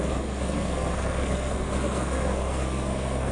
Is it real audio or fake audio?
fake